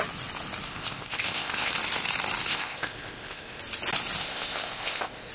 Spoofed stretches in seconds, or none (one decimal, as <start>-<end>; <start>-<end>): 0.7-1.7; 2.5-3.6; 4.2-5.3